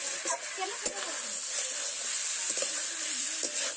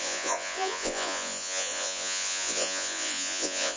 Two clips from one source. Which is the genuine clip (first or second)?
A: first